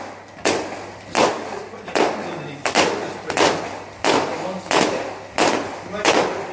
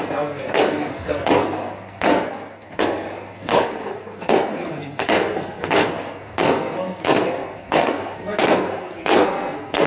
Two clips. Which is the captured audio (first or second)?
first